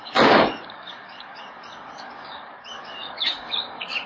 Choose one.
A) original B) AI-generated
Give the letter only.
B